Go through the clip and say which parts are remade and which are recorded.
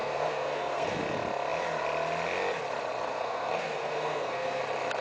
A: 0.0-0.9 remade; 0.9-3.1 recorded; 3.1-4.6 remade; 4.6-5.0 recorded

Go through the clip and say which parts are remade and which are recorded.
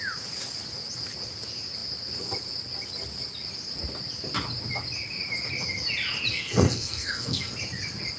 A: 0.0-6.3 recorded; 6.3-7.5 remade; 7.5-8.2 recorded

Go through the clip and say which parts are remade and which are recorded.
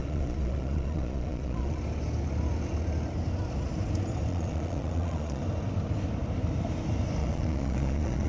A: 0.0-1.8 remade; 1.8-4.3 recorded; 4.3-5.4 remade; 5.4-7.2 recorded; 7.2-8.3 remade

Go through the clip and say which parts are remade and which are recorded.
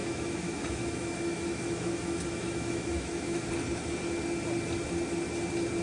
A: 0.0-3.5 remade; 3.5-5.8 recorded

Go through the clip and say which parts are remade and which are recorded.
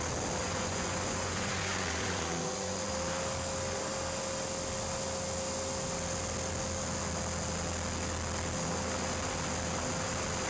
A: 0.0-0.4 recorded; 0.4-2.9 remade; 2.9-10.5 recorded